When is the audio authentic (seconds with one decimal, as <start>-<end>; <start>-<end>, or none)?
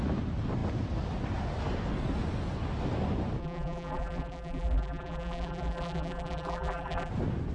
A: 0.0-3.4; 7.1-7.5